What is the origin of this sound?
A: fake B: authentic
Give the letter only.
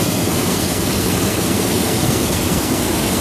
A